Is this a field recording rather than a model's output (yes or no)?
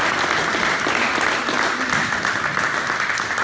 yes